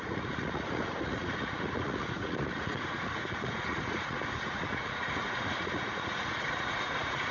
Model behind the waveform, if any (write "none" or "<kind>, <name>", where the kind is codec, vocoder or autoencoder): vocoder, Vocos